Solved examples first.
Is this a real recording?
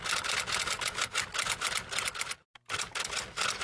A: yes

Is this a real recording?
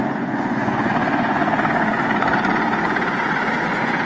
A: no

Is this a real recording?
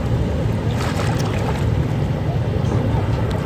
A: yes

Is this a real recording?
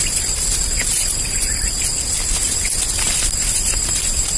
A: yes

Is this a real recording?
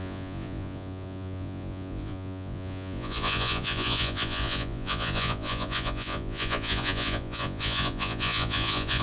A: no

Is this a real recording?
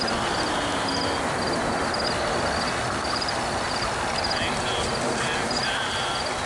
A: yes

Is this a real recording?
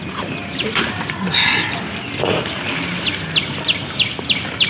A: yes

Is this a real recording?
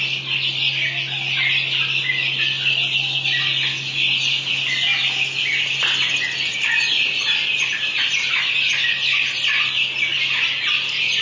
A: yes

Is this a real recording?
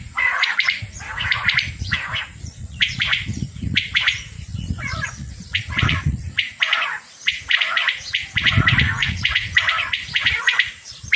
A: no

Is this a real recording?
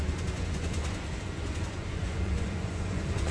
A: no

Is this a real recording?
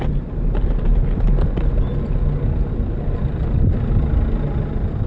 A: yes